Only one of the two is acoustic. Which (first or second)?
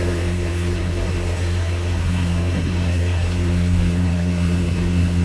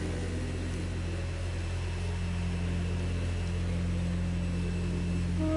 second